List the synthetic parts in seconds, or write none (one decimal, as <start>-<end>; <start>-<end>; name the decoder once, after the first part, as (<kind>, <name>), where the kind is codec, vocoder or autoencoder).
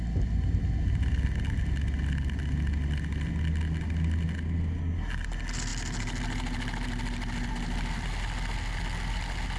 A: none